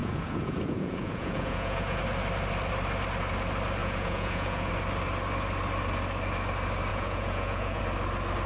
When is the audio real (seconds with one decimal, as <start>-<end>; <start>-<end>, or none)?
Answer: 2.0-3.8; 4.7-6.9; 7.8-8.5